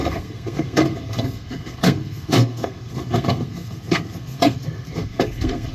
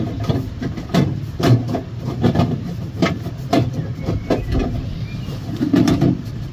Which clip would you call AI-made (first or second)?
first